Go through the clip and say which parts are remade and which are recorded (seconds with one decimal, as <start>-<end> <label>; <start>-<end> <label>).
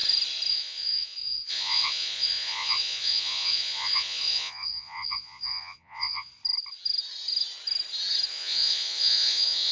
0.0-0.5 recorded; 0.5-6.3 remade; 6.3-8.3 recorded; 8.3-9.7 remade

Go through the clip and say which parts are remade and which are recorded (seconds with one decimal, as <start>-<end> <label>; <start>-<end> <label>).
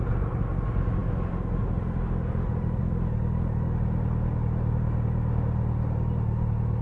0.0-6.8 recorded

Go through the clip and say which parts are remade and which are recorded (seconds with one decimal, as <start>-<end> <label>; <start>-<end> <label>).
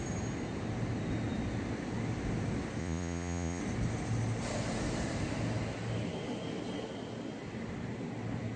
0.0-2.8 recorded; 2.8-3.6 remade; 3.6-8.6 recorded